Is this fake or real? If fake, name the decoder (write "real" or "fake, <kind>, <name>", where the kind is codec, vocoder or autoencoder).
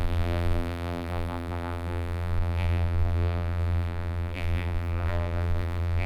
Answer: fake, vocoder, BigVGAN v2